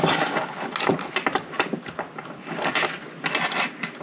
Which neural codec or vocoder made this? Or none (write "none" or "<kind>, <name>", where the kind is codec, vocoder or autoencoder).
none